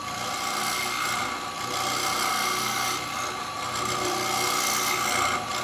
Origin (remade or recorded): recorded